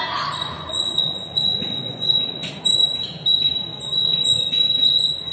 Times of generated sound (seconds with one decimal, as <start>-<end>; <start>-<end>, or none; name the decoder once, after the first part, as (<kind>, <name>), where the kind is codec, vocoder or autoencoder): 0.4-2.5 (vocoder, Vocos); 3.7-4.4